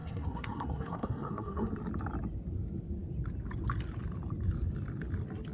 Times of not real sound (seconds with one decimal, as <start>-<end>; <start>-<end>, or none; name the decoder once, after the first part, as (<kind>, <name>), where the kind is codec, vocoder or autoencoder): 0.0-1.7 (codec, SNAC)